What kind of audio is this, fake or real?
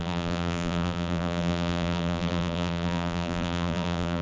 fake